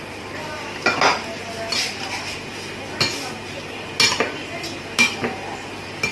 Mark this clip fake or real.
real